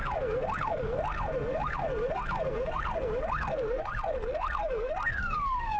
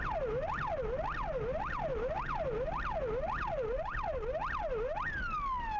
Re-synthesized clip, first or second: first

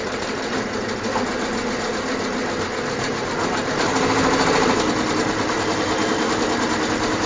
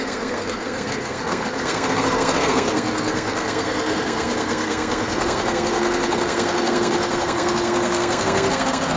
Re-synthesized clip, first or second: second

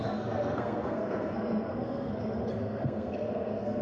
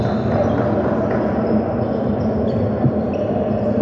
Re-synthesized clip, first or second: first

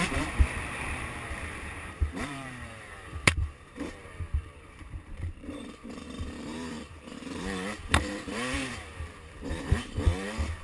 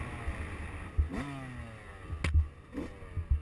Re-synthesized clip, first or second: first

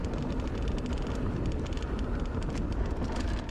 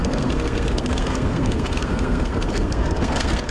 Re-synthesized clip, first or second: second